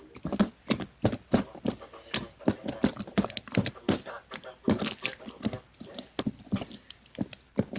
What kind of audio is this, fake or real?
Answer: real